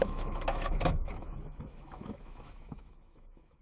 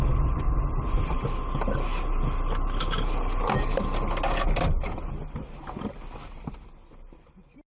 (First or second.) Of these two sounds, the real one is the second